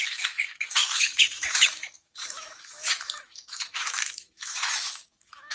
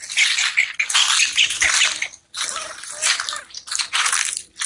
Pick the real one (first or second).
second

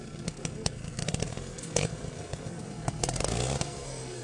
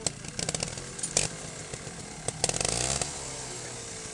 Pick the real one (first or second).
second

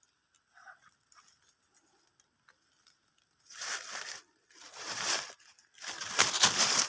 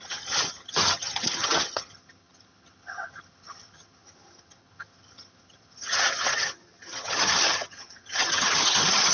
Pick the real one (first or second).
first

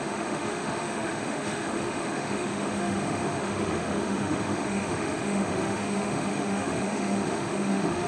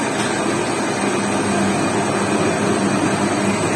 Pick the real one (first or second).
second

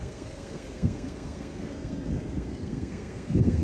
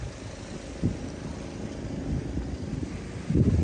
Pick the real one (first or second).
second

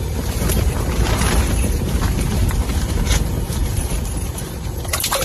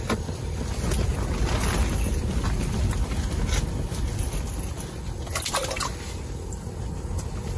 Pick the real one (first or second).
second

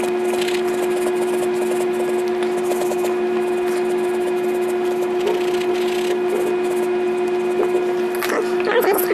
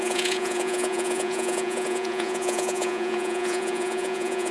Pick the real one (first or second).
first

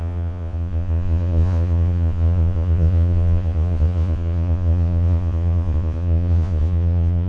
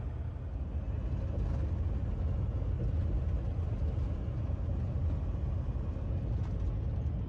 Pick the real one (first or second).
second